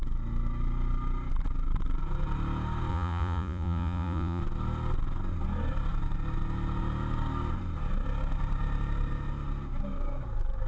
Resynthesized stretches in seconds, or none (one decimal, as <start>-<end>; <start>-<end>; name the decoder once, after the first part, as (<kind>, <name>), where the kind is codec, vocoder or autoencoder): 2.9-4.4 (vocoder, Vocos)